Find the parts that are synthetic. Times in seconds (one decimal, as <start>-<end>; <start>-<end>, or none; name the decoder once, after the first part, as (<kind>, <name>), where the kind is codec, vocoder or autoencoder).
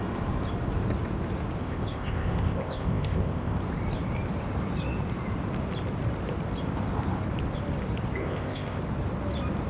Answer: 1.6-3.6 (codec, ZipCodec); 8.2-8.8